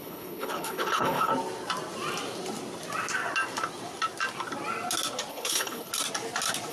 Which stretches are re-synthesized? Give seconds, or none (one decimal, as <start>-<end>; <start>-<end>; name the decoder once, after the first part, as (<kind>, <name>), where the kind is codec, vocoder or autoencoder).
0.0-1.3 (codec, HILCodec); 5.3-5.9